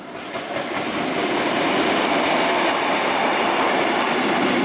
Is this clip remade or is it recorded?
recorded